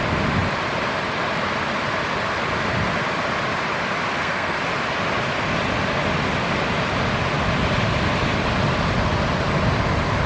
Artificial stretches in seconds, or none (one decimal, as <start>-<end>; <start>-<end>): 4.1-4.6